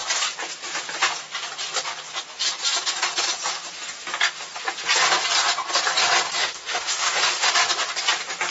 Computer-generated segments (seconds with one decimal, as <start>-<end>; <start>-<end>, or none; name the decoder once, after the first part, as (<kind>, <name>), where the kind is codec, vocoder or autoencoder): 6.4-7.5 (autoencoder, DAC-VAE)